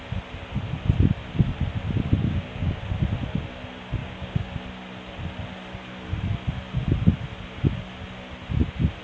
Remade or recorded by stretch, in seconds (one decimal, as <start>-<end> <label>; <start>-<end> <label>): 0.0-2.2 recorded; 2.2-2.8 remade; 2.8-4.0 recorded; 4.0-4.5 remade; 4.5-9.0 recorded